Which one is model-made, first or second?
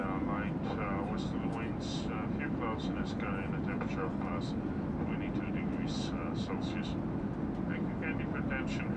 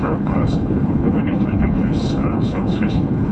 second